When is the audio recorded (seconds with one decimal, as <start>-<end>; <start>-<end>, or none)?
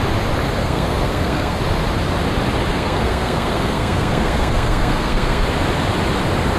0.0-0.6; 1.6-2.7; 5.4-6.6